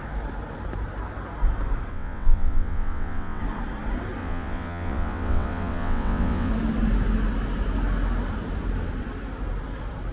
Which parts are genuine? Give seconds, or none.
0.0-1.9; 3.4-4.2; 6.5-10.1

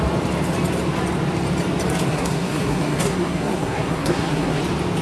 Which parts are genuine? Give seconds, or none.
0.0-2.1; 4.6-5.0

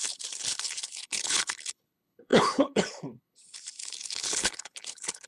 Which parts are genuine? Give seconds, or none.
none

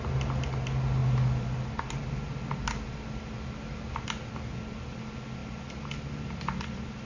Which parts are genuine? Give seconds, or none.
0.0-7.1